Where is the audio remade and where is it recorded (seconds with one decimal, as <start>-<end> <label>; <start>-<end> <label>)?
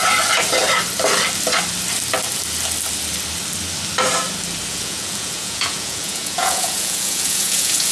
0.0-4.7 recorded; 4.7-7.9 remade